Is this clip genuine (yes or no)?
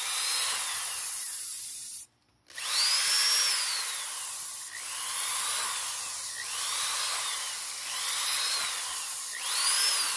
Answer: yes